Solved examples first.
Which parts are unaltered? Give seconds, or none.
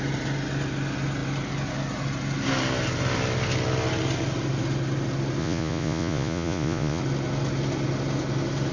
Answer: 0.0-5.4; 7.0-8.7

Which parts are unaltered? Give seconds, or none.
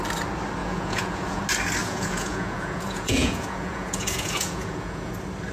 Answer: 0.0-0.6; 1.4-1.8; 5.1-5.5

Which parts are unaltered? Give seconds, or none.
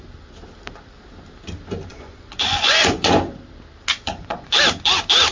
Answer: 0.0-1.9; 3.2-3.9; 4.6-5.3